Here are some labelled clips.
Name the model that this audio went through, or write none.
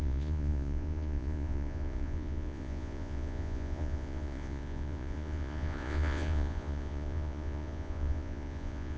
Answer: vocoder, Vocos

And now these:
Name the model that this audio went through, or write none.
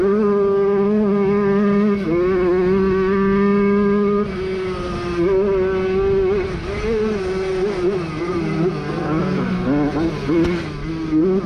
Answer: none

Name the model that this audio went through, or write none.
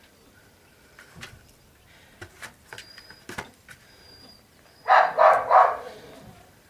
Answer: vocoder, BigVGAN v2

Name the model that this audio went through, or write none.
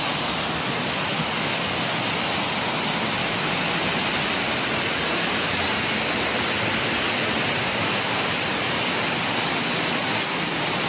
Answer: none